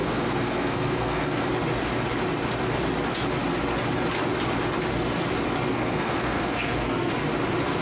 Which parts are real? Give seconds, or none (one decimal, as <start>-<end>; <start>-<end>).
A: 1.5-5.7; 7.1-7.8